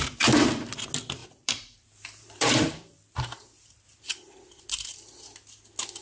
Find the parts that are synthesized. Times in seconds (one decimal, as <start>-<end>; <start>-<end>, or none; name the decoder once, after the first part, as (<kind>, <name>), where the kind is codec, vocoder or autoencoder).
1.2-4.6 (vocoder, BigVGAN v2)